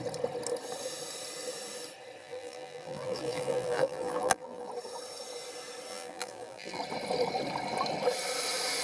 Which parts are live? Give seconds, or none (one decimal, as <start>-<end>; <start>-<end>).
0.0-2.2; 4.7-5.9; 6.8-8.8